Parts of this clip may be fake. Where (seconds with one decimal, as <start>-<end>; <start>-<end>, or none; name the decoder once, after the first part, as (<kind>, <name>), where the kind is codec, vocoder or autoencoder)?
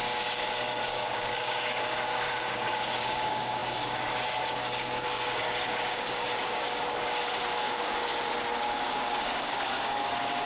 0.0-8.1 (codec, DAC); 8.7-10.5